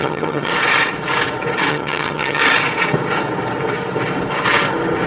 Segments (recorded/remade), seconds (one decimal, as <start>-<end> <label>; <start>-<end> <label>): 0.0-0.5 remade; 0.5-1.7 recorded; 1.7-2.4 remade; 2.4-5.1 recorded